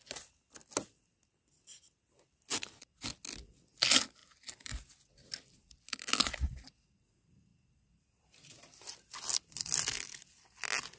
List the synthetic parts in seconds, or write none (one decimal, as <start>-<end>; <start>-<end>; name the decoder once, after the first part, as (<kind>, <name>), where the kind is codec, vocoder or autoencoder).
none